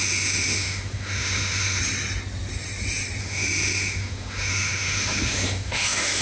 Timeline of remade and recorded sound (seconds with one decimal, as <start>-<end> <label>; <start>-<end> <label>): 0.0-1.8 remade; 1.8-3.2 recorded; 3.2-6.2 remade